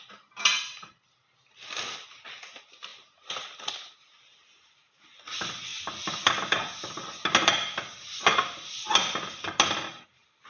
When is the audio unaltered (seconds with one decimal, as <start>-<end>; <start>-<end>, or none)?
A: 0.0-2.9; 4.9-10.5